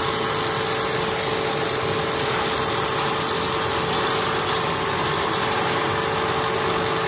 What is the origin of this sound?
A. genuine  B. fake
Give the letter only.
A